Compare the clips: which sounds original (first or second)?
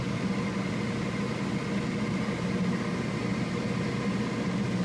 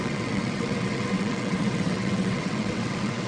first